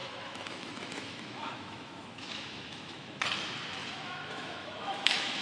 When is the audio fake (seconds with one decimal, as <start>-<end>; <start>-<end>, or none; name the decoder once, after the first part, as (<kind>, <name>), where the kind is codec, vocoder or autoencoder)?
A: 0.0-3.2 (autoencoder, DAC-VAE); 3.8-5.4